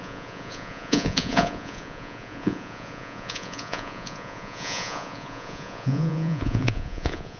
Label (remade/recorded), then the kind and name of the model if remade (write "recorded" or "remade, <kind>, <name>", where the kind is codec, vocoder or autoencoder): remade, vocoder, Vocos